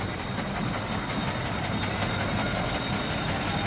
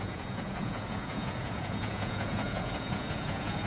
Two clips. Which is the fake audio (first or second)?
second